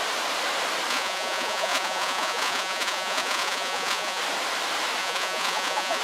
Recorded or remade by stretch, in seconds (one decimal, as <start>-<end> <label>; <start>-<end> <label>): 0.0-0.9 recorded; 0.9-4.2 remade; 4.2-5.0 recorded; 5.0-6.0 remade